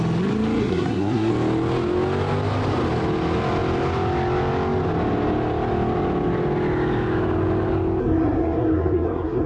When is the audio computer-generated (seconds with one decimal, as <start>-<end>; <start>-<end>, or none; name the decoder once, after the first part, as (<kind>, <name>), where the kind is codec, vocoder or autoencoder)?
0.6-1.3 (codec, SNAC); 8.0-9.5